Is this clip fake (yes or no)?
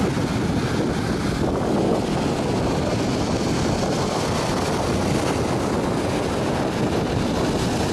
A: no